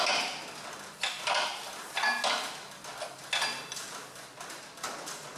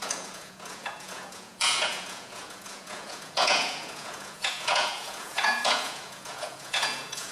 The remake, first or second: second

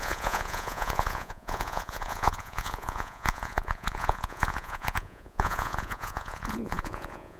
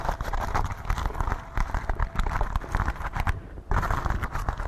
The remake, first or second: first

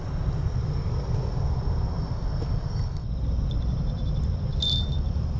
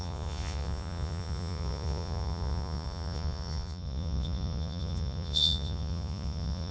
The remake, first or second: second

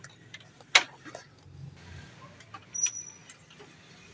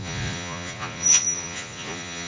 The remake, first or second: second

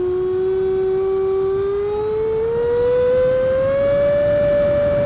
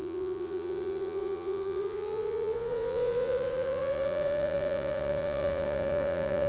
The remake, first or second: second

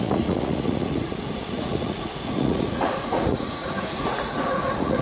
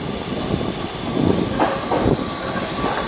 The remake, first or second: first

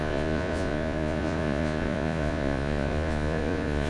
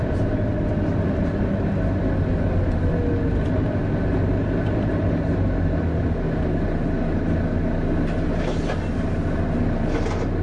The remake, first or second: first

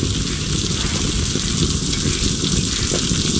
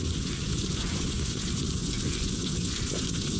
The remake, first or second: second